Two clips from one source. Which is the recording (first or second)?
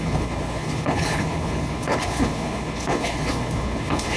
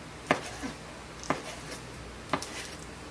second